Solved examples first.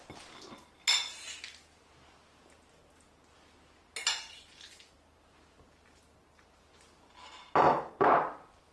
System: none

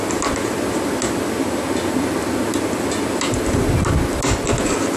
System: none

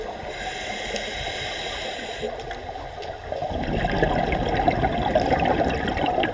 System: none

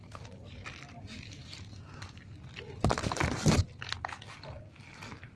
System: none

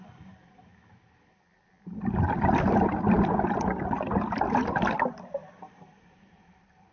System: vocoder, BigVGAN v2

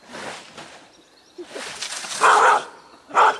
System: none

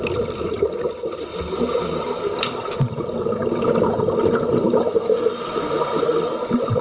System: none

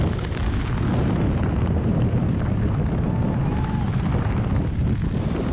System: none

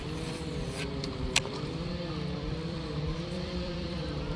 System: vocoder, BigVGAN v2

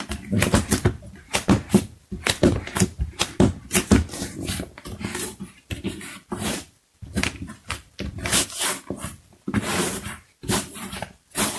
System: vocoder, BigVGAN v2